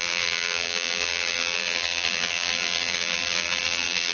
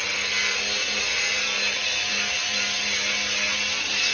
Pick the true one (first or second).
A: second